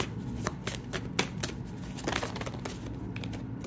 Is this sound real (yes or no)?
yes